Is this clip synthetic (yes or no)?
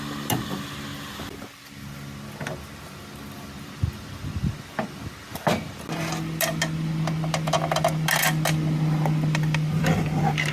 no